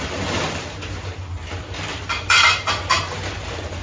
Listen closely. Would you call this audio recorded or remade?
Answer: recorded